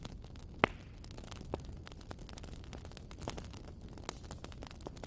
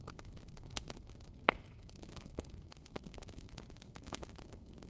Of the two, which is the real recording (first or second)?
first